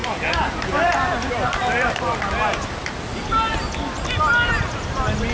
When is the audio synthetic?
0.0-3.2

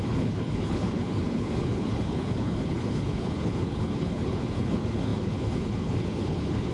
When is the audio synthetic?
0.0-6.7

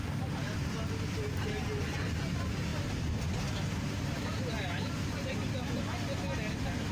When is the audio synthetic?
none

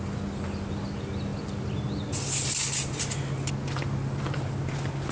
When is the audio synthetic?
none

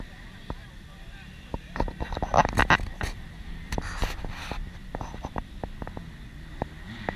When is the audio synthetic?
none

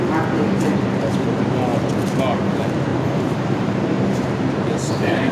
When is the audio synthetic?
2.9-5.3

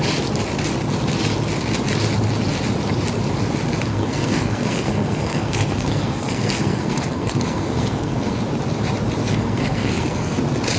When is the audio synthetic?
3.9-8.4; 9.3-10.4

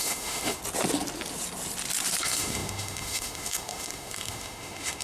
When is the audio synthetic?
0.0-0.6; 2.2-5.0